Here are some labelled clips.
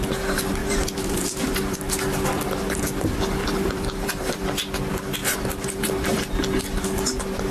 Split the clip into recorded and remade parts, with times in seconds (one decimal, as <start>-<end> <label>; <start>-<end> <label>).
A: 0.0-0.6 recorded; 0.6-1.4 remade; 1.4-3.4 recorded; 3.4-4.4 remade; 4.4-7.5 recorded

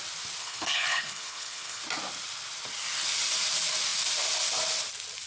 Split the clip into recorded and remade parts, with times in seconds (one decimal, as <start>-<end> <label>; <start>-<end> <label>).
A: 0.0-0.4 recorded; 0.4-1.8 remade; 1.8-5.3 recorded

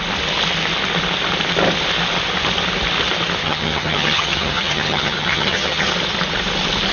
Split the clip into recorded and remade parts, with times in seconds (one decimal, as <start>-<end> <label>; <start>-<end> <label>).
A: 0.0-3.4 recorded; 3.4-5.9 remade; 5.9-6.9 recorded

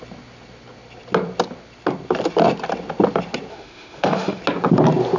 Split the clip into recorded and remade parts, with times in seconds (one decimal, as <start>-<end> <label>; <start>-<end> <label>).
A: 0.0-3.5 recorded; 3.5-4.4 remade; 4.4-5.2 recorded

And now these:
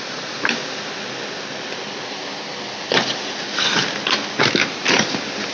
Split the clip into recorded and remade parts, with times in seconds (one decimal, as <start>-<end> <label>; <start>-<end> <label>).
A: 0.0-5.5 recorded

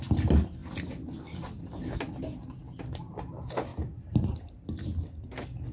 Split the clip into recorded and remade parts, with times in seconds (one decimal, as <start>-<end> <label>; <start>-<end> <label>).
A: 0.0-5.7 recorded